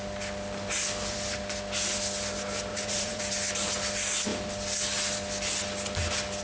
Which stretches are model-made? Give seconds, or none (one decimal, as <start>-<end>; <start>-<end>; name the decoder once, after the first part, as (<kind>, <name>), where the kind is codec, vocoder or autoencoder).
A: 2.7-3.2 (vocoder, Vocos)